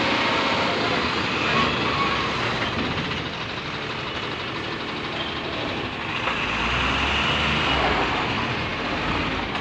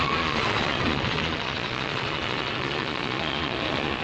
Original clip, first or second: first